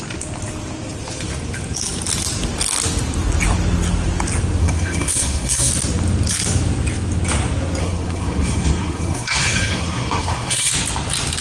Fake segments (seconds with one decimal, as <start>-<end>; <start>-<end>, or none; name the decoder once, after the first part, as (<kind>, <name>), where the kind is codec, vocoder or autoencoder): 4.6-5.7 (codec, SNAC); 7.8-10.7